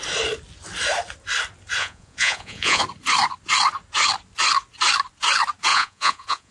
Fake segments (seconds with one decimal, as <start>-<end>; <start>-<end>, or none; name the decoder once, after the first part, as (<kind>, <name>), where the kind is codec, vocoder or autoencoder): 1.8-2.8 (vocoder, Vocos); 5.7-6.5